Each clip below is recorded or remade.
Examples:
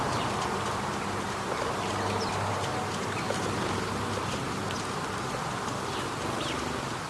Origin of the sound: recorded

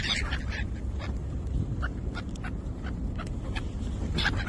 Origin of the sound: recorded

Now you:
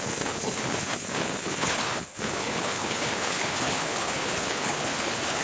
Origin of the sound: remade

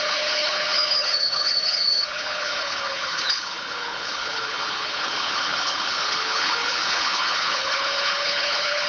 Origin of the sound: remade